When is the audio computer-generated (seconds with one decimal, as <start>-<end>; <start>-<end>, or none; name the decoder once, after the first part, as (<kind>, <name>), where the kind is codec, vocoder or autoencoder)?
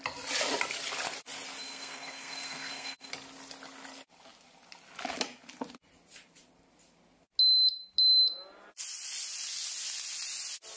1.6-3.1 (codec, SNAC)